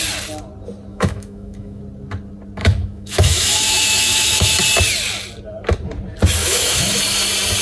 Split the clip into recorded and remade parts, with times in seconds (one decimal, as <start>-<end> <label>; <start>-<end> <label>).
0.0-0.9 recorded; 0.9-1.8 remade; 1.8-2.6 recorded; 2.6-4.6 remade; 4.6-6.4 recorded; 6.4-7.0 remade; 7.0-7.6 recorded